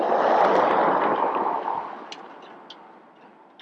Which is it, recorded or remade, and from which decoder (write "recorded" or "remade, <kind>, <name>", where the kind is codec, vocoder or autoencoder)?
recorded